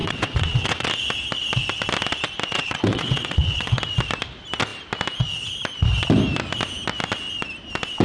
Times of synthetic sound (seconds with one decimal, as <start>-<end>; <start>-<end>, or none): 0.0-0.9; 2.5-3.8